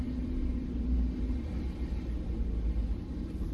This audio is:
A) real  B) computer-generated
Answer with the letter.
A